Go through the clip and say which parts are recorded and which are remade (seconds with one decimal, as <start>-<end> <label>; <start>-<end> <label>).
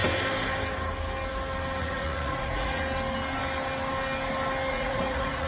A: 0.0-1.8 recorded; 1.8-2.8 remade; 2.8-4.7 recorded; 4.7-5.5 remade